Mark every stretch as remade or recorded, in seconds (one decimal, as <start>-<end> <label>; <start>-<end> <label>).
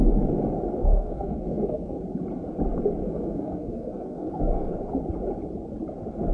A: 0.0-0.8 recorded; 0.8-2.0 remade; 2.0-3.0 recorded; 3.0-4.7 remade; 4.7-6.3 recorded